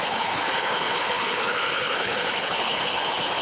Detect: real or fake fake